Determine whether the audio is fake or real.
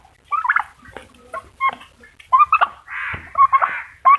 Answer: real